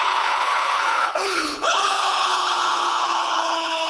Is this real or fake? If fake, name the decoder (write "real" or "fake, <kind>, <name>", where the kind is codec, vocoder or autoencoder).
fake, codec, HILCodec